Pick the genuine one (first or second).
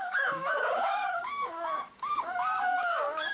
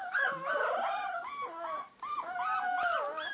second